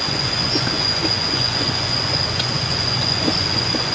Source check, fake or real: fake